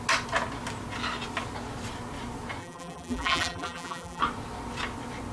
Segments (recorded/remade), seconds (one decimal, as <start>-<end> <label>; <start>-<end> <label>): 0.0-2.6 recorded; 2.6-4.2 remade; 4.2-5.3 recorded